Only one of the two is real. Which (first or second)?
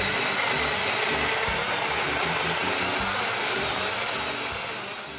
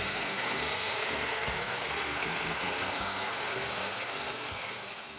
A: first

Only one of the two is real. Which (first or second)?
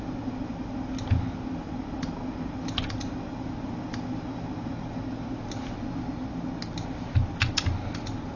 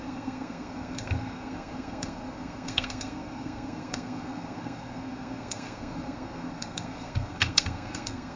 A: first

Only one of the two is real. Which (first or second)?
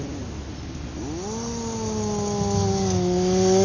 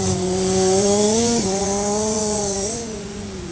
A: first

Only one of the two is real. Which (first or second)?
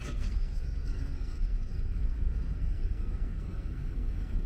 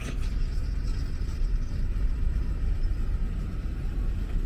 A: second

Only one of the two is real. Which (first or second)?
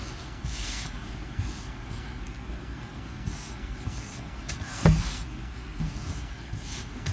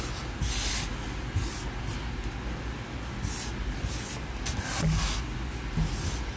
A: second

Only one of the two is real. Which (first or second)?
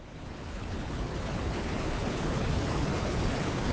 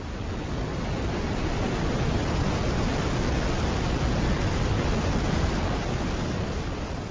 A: second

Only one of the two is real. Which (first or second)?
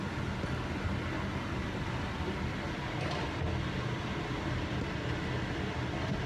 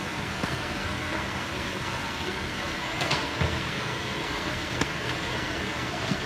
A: first